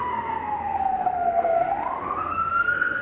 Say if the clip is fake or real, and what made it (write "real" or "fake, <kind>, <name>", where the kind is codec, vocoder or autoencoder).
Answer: fake, codec, SNAC